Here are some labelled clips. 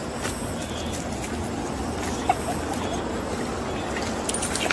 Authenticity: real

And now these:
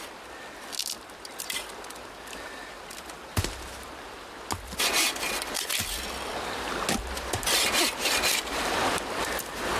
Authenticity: real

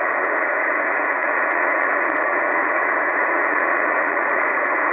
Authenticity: fake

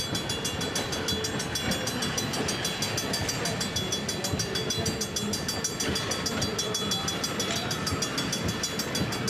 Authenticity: real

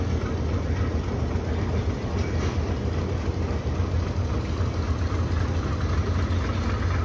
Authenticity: real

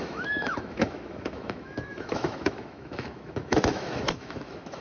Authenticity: fake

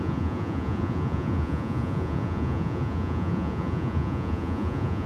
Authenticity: fake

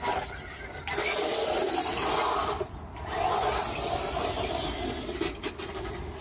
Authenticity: real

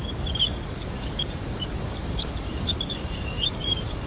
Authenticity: fake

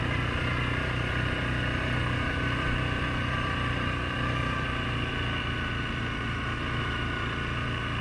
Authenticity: real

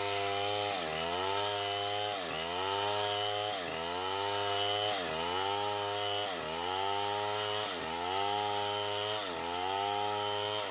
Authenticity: real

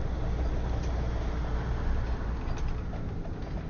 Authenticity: real